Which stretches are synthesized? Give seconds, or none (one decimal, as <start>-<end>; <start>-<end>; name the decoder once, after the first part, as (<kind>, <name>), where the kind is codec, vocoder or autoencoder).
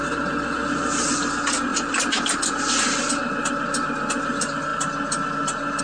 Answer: none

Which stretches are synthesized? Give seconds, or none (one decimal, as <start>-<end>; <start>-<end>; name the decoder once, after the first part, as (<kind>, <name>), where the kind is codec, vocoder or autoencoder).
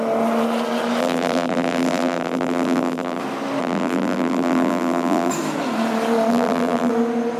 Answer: 1.0-3.2 (vocoder, BigVGAN v2); 3.6-5.3; 6.3-6.9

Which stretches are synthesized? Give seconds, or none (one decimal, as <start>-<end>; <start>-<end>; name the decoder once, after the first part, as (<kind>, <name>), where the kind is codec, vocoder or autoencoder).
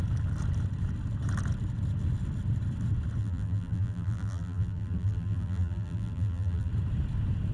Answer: 3.2-6.7 (vocoder, BigVGAN v2)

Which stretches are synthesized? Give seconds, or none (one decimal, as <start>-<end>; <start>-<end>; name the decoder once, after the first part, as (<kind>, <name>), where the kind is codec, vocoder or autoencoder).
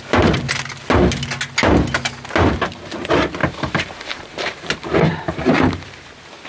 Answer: 3.4-6.1 (vocoder, BigVGAN v2)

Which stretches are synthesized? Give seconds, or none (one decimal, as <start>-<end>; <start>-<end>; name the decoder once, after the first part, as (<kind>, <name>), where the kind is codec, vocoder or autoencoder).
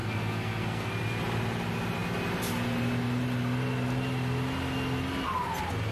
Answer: 0.0-0.9 (codec, SNAC)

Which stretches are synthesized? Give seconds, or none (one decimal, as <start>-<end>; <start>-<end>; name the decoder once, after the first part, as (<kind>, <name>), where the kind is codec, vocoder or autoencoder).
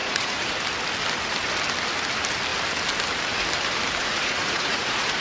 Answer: 0.0-0.5 (vocoder, Vocos); 4.0-5.2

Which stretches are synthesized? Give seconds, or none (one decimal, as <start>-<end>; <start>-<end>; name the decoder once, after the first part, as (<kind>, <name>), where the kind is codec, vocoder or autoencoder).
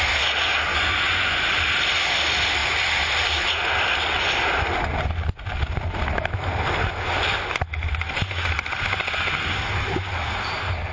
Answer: 0.7-1.4 (vocoder, Vocos)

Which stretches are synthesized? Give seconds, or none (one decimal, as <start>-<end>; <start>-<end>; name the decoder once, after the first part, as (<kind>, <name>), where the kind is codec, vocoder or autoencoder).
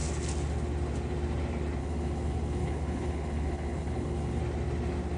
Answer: 1.8-4.4 (codec, HILCodec)